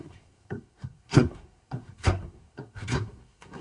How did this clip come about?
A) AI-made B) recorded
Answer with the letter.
A